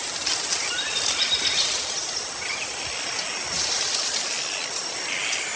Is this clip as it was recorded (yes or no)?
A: yes